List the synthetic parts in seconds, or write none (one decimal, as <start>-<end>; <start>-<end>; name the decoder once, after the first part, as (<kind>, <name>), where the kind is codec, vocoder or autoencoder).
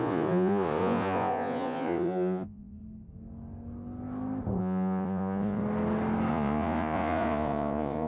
0.0-2.8 (vocoder, Vocos); 4.6-5.6; 6.3-8.1